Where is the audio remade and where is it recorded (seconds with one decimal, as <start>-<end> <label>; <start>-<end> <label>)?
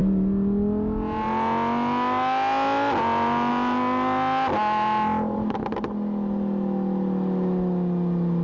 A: 0.0-8.4 recorded